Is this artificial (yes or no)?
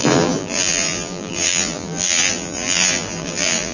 yes